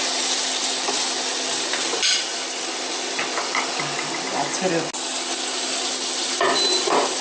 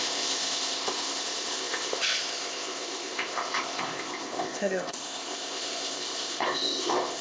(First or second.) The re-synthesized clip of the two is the second